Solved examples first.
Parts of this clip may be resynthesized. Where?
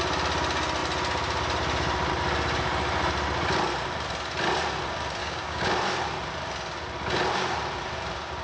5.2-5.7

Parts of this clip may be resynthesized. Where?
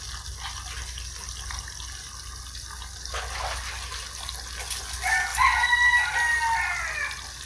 none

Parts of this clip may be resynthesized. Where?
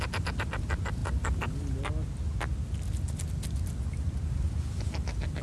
none